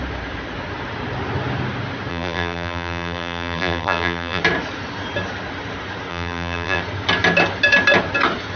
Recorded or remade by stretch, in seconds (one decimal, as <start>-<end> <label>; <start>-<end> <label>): 0.0-2.1 recorded; 2.1-4.4 remade; 4.4-6.1 recorded; 6.1-6.8 remade; 6.8-8.6 recorded